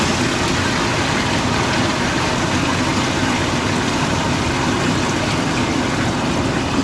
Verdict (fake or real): real